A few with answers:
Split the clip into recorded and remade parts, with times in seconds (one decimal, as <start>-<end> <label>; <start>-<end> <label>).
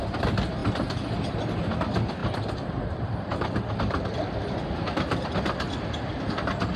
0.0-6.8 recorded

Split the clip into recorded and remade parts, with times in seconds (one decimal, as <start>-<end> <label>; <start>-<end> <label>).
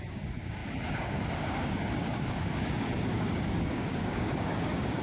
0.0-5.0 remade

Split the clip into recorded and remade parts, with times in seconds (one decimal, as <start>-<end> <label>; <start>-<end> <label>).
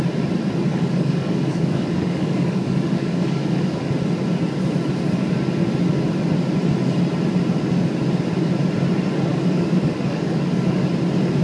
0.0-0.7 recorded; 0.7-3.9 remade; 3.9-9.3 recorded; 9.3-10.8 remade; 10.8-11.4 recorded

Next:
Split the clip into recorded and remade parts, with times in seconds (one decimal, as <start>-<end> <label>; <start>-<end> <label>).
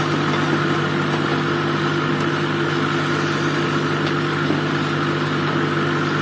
0.0-6.2 recorded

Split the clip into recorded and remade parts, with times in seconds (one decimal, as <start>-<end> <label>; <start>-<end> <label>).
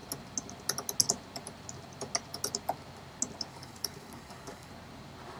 0.0-3.5 recorded; 3.5-4.7 remade; 4.7-5.4 recorded